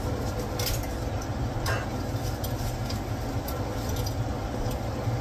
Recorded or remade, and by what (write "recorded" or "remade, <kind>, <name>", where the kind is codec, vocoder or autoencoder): recorded